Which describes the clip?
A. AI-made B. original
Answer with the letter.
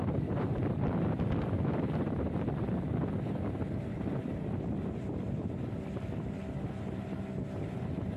B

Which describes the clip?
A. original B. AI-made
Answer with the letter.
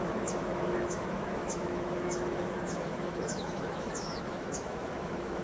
B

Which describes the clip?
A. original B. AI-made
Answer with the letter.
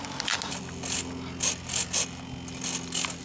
A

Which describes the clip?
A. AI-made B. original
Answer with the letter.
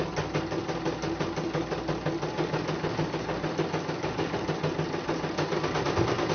B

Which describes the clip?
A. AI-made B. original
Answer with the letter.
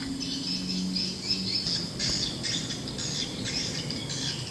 B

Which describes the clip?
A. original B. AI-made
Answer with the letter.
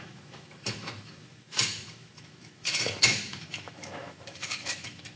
B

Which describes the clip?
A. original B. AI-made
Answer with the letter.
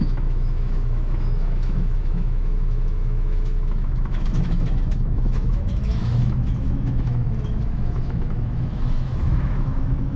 B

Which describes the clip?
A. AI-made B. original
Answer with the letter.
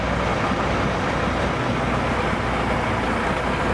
B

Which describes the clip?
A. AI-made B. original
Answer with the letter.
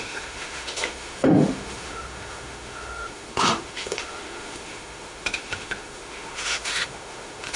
A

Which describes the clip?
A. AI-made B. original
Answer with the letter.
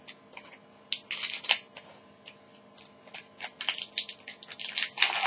B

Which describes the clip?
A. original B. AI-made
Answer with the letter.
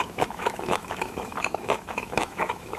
B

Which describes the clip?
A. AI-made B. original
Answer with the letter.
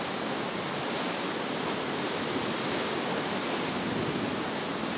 B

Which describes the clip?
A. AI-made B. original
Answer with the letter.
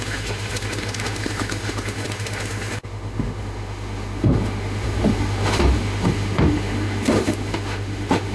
A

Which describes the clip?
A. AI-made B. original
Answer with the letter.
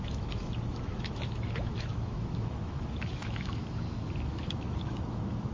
A